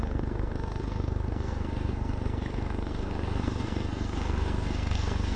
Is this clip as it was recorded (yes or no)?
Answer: no